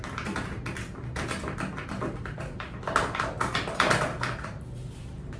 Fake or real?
real